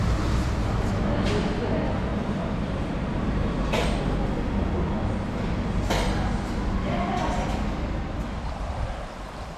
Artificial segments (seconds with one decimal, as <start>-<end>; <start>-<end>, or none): 2.1-4.0